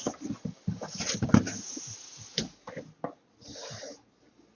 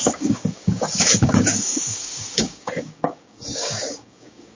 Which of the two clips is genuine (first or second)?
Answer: first